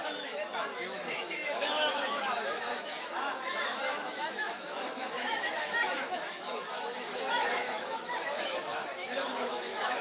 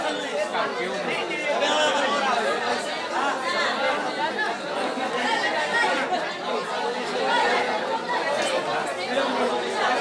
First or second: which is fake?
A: first